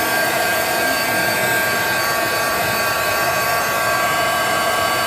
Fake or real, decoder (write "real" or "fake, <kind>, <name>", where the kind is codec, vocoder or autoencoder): fake, vocoder, BigVGAN v2